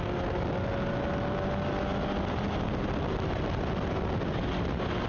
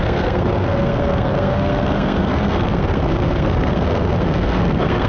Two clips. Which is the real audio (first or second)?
first